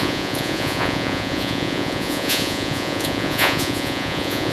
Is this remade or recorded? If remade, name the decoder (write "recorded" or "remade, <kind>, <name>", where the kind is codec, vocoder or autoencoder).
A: remade, vocoder, Vocos